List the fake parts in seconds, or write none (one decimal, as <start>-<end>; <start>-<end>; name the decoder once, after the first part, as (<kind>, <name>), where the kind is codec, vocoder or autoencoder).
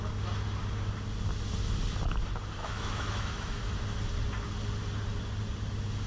2.6-3.6 (autoencoder, DAC-VAE)